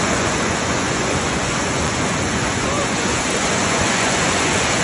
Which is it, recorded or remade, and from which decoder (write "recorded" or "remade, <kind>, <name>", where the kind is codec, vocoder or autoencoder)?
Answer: remade, vocoder, Vocos